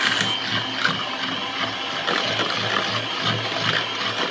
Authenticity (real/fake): real